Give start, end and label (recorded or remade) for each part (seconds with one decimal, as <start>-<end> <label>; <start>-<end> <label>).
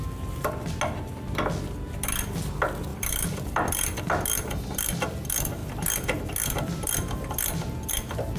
0.0-2.9 recorded; 2.9-4.0 remade; 4.0-8.4 recorded